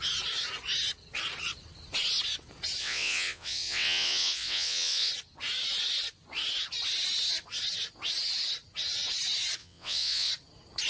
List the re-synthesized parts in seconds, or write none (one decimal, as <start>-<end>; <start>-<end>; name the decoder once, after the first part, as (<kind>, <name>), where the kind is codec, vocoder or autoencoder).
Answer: 2.8-5.1 (vocoder, WaveNeXt); 9.6-10.3